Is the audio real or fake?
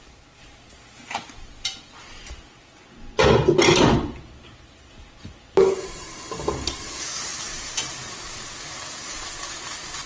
real